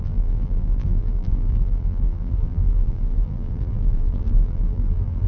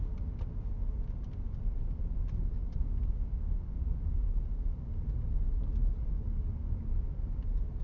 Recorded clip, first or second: second